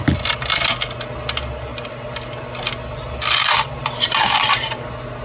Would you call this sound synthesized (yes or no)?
no